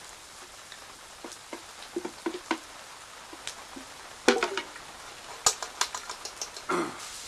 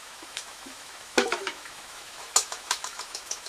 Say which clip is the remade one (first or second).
second